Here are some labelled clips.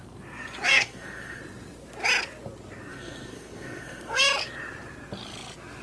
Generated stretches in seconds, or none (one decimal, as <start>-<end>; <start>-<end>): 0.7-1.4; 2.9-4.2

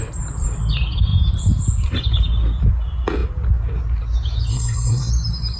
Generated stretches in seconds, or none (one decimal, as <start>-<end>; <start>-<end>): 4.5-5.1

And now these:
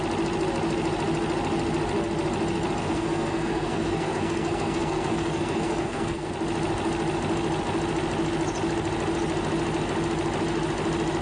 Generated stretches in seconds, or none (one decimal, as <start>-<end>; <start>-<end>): 2.8-6.3